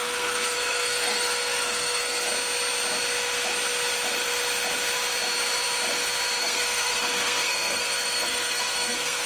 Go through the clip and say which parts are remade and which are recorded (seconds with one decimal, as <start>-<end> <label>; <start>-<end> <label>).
0.0-2.3 remade; 2.3-6.4 recorded; 6.4-9.3 remade